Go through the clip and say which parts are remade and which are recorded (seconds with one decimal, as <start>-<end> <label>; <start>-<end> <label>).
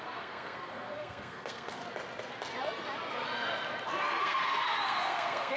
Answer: 0.0-1.8 remade; 1.8-4.2 recorded; 4.2-5.6 remade